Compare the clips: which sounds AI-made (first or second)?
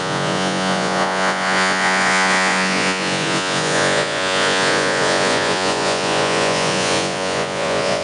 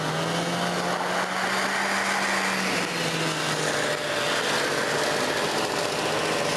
first